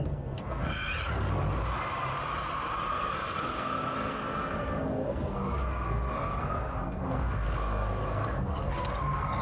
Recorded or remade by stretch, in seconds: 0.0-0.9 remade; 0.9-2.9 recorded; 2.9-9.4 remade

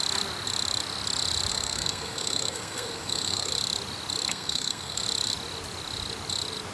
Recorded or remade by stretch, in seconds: 0.0-1.5 recorded; 1.5-3.5 remade; 3.5-4.3 recorded; 4.3-5.0 remade; 5.0-6.7 recorded

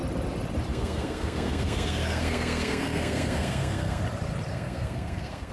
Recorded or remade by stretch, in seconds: 0.0-0.7 recorded; 0.7-4.0 remade; 4.0-4.5 recorded; 4.5-5.5 remade

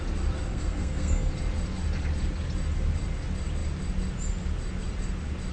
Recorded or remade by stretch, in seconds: 0.0-0.5 recorded; 0.5-1.3 remade; 1.3-5.5 recorded

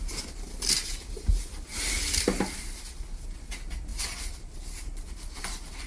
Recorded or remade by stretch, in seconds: 0.0-5.9 recorded

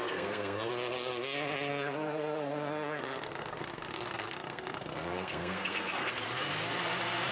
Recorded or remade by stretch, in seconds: 0.0-0.7 remade; 0.7-1.7 recorded; 1.7-6.1 remade; 6.1-7.3 recorded

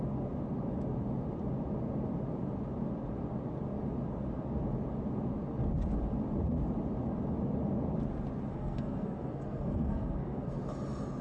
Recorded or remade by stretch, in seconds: 0.0-8.5 recorded; 8.5-10.6 remade; 10.6-11.2 recorded